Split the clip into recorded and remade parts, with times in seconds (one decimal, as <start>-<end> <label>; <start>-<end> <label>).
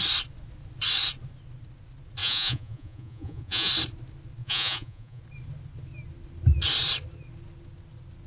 0.0-2.2 recorded; 2.2-3.7 remade; 3.7-4.4 recorded; 4.4-5.2 remade; 5.2-8.3 recorded